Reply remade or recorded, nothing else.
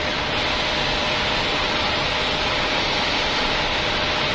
remade